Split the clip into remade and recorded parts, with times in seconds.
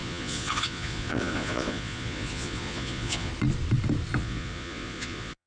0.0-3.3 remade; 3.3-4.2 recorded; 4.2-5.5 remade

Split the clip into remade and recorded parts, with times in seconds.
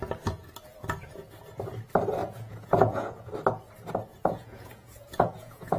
0.0-2.2 recorded; 2.2-3.3 remade; 3.3-4.1 recorded; 4.1-5.8 remade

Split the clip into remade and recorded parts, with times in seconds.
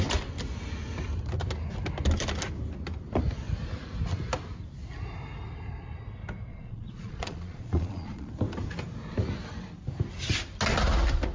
0.0-6.5 recorded; 6.5-8.3 remade; 8.3-11.3 recorded